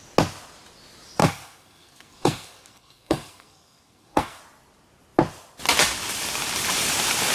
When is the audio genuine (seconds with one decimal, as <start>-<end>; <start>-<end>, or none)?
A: 0.0-1.2; 4.4-7.3